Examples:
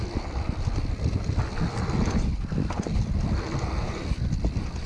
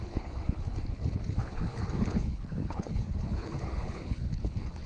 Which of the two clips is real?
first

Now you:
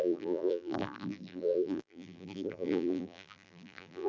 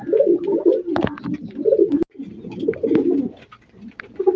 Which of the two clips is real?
second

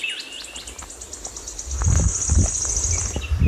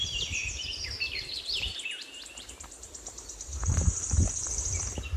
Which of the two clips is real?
first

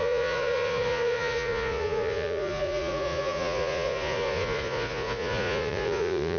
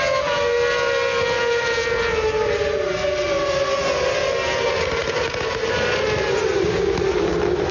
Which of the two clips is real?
second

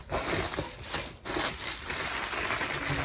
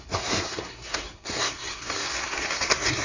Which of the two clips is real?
first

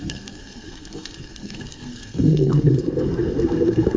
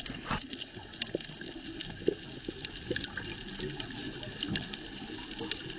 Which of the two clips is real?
second